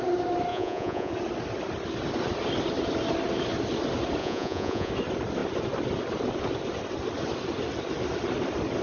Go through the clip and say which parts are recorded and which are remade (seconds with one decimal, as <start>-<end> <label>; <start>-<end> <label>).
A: 0.0-0.5 recorded; 0.5-1.1 remade; 1.1-4.2 recorded; 4.2-4.9 remade; 4.9-8.8 recorded